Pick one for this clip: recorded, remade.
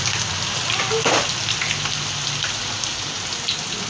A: recorded